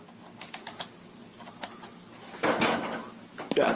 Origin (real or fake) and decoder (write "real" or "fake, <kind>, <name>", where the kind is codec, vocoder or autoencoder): real